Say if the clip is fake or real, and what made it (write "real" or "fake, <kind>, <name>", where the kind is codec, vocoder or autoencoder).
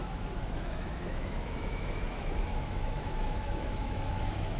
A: fake, autoencoder, DAC-VAE